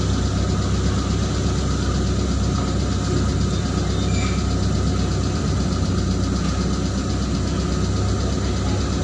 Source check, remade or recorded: recorded